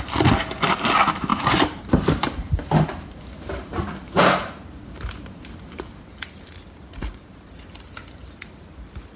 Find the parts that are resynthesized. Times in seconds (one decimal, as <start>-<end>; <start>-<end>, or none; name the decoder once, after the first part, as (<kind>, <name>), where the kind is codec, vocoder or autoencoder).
1.3-5.9 (vocoder, BigVGAN v2); 7.0-7.5